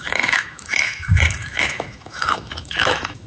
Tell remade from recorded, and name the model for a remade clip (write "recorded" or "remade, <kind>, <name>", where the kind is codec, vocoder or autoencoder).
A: remade, autoencoder, DAC-VAE